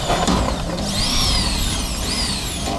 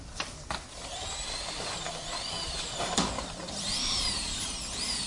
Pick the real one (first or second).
first